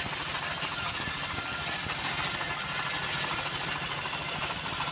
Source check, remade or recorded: recorded